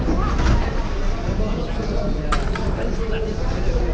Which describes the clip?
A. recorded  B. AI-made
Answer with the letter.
A